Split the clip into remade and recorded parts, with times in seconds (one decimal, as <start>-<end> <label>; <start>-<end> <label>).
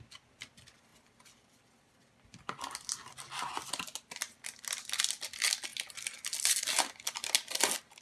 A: 0.0-8.0 recorded